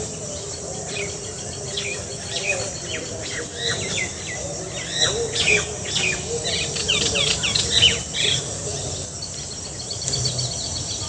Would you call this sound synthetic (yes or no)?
no